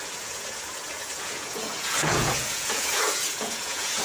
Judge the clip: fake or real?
fake